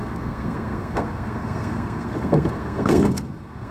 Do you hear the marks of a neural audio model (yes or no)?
yes